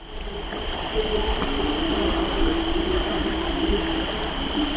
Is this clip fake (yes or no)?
no